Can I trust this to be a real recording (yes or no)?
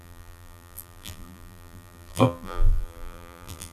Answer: no